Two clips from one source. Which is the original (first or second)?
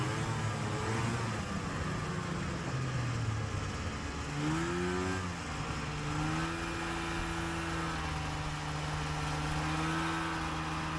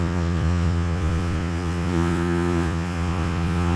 first